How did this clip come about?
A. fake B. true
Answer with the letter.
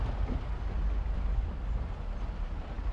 B